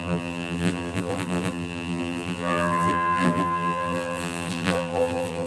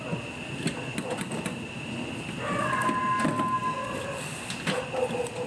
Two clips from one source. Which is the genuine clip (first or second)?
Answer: second